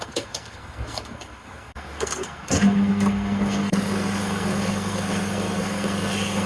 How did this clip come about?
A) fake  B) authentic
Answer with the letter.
A